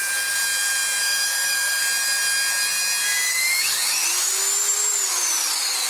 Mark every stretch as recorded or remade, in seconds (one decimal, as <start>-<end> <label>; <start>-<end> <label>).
0.0-1.0 recorded; 1.0-1.8 remade; 1.8-3.3 recorded; 3.3-4.0 remade; 4.0-5.9 recorded